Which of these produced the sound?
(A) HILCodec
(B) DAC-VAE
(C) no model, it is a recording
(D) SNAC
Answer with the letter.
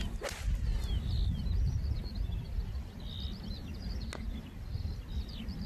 C